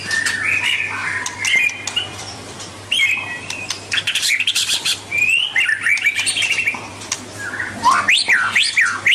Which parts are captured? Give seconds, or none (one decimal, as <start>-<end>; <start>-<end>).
0.0-1.0; 5.8-9.1